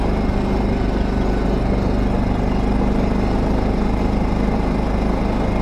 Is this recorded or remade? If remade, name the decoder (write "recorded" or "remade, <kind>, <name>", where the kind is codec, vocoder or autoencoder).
recorded